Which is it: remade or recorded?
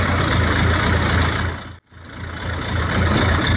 recorded